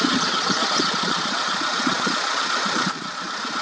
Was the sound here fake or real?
fake